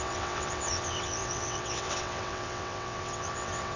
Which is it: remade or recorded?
remade